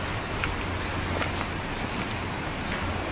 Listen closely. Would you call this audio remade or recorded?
recorded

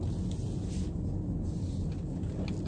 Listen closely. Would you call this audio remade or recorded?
recorded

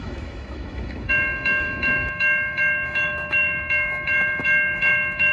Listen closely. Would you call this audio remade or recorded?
remade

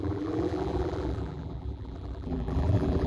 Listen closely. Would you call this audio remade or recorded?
remade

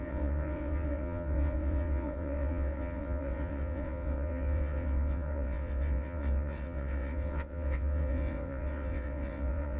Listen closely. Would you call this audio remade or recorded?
remade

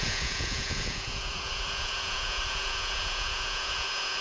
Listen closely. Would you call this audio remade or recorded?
remade